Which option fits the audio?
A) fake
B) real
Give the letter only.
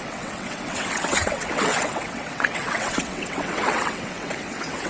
A